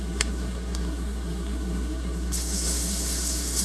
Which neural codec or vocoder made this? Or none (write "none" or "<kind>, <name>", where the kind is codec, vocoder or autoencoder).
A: codec, SNAC